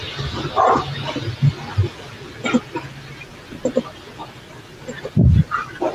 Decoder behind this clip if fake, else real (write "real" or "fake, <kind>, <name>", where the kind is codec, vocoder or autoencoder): real